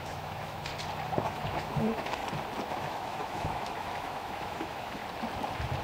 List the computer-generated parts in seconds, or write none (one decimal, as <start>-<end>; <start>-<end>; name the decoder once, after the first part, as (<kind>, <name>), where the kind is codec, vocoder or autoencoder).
0.0-0.7 (autoencoder, DAC-VAE); 1.2-2.2; 2.7-5.0